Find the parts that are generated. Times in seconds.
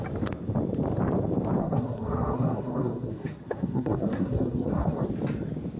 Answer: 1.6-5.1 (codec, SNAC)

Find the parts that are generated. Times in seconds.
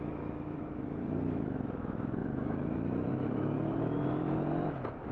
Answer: 0.0-5.1 (autoencoder, DAC-VAE)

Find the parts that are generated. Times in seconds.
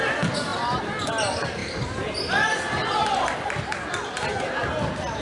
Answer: 1.6-4.7 (vocoder, BigVGAN v2)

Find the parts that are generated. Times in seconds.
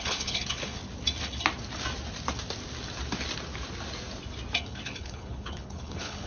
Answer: 0.0-0.8 (codec, HILCodec); 4.6-6.3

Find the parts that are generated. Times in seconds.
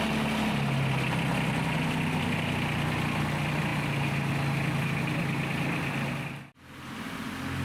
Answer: none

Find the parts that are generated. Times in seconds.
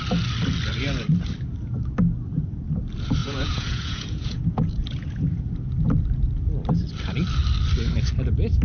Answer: 3.2-5.4 (vocoder, Vocos)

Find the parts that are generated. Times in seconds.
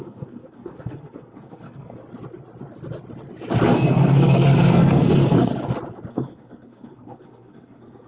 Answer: 0.0-2.0 (codec, SNAC); 3.7-5.5; 6.1-8.1